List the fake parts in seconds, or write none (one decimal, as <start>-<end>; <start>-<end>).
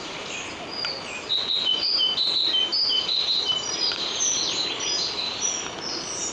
1.3-1.9